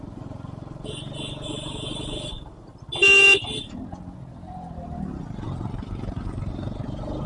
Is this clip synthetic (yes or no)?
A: no